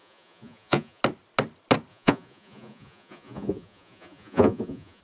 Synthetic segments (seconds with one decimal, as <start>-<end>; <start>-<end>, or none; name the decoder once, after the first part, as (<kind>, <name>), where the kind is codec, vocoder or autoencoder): 0.0-1.0 (vocoder, Vocos); 1.9-5.0